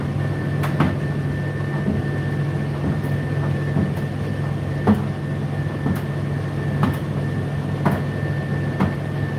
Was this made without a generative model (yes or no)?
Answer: yes